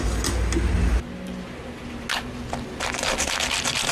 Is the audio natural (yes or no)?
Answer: yes